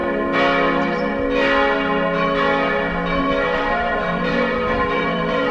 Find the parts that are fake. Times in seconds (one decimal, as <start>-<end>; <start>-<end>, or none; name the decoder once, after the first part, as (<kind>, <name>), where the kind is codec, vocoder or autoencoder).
3.2-5.5 (vocoder, BigVGAN v2)